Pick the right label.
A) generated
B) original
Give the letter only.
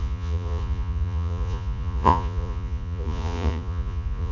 A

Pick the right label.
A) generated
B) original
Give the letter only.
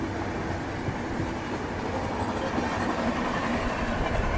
B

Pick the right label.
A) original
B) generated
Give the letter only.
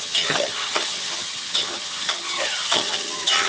B